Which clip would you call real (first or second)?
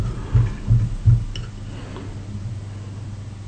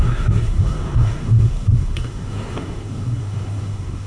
first